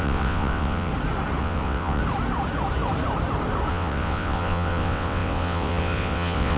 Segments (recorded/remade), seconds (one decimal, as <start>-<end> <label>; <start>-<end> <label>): 0.0-0.9 remade; 0.9-1.4 recorded; 1.4-2.0 remade; 2.0-3.7 recorded; 3.7-6.6 remade